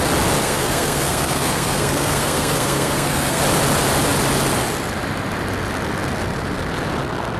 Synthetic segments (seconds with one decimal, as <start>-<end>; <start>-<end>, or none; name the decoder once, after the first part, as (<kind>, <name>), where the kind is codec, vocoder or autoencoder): 0.4-3.4 (codec, SNAC)